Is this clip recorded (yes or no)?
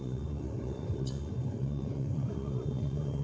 no